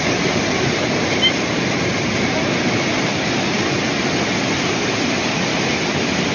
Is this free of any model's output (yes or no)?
yes